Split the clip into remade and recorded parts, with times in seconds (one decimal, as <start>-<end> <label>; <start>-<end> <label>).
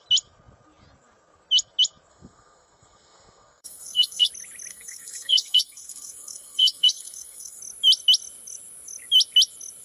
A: 0.0-2.1 recorded; 2.1-4.3 remade; 4.3-4.7 recorded; 4.7-7.6 remade; 7.6-9.8 recorded